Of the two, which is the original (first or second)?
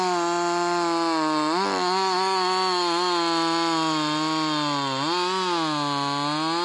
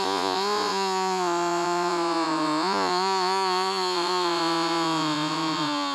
first